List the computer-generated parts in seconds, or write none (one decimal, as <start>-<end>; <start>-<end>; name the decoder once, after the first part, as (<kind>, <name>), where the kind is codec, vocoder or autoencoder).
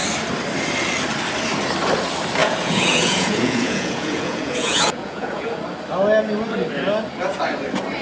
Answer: 2.4-5.6 (vocoder, Vocos)